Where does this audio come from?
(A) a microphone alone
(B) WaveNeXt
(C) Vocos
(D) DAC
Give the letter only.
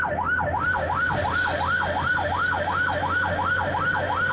A